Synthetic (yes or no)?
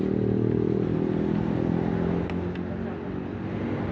no